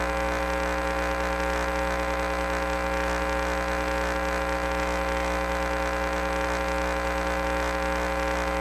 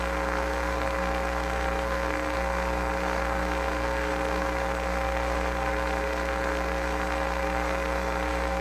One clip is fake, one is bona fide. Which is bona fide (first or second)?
first